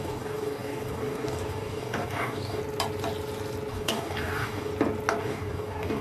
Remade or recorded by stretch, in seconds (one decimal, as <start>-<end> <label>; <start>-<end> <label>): 0.0-2.6 remade; 2.6-3.7 recorded; 3.7-4.7 remade; 4.7-5.2 recorded; 5.2-6.0 remade